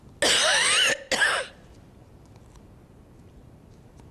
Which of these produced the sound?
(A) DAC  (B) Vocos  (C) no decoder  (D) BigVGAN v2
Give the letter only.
C